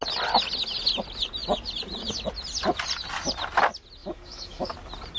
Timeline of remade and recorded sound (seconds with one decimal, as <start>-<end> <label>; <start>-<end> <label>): 0.0-4.0 recorded; 4.0-4.7 remade; 4.7-5.2 recorded